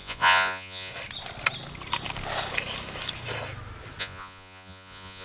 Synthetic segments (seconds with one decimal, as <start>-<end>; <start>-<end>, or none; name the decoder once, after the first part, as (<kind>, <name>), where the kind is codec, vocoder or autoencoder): 0.0-0.9 (vocoder, Vocos); 4.0-5.2